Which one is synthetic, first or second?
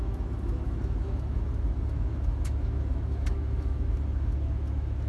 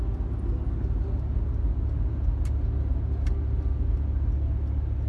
first